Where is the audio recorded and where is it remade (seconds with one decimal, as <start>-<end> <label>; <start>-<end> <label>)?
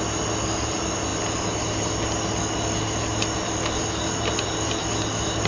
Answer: 0.0-5.5 recorded